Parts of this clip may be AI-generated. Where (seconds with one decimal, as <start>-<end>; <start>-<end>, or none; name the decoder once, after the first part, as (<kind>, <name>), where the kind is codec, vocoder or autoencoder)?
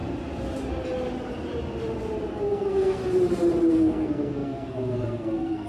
2.3-3.0 (codec, SNAC); 3.7-5.7